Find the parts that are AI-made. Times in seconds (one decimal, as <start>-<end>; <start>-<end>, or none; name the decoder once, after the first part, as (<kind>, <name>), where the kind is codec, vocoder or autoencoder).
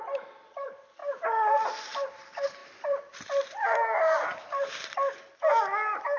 0.0-1.0 (vocoder, BigVGAN v2); 2.1-2.6